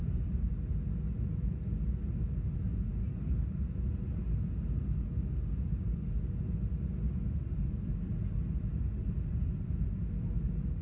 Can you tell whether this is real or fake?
real